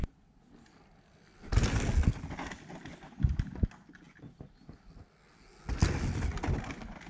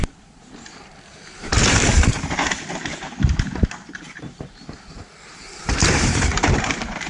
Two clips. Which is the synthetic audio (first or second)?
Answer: second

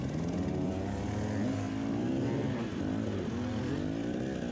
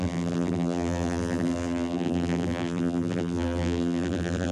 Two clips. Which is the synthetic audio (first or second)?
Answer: second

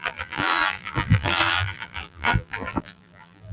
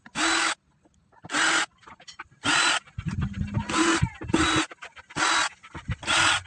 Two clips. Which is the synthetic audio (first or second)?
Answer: first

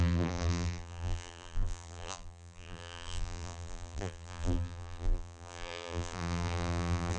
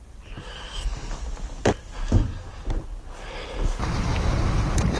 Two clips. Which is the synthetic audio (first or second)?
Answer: first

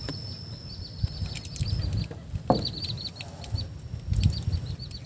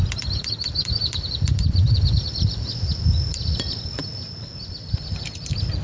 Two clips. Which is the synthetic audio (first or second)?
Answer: second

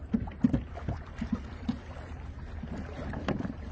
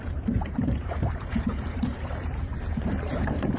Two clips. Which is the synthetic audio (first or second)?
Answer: second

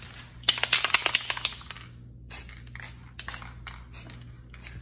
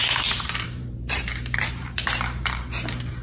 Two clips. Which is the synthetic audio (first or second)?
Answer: second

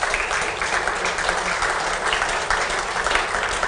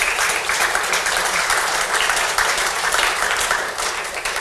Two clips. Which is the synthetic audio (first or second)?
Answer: second